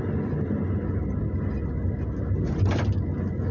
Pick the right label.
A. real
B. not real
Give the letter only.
A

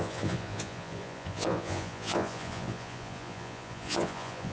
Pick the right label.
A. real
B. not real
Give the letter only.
B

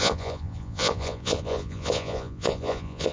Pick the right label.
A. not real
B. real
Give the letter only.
A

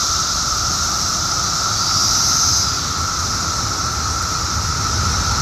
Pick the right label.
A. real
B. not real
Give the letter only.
A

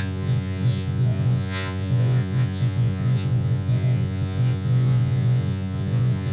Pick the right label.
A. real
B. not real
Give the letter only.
B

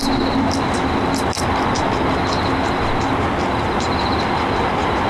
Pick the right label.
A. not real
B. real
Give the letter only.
B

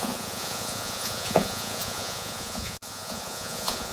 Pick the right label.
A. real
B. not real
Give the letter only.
B